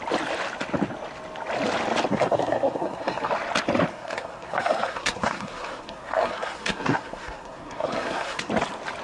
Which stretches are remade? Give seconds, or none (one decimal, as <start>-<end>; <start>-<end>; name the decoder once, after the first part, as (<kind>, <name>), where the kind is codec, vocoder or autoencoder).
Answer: 2.1-3.3 (codec, SNAC); 3.9-8.5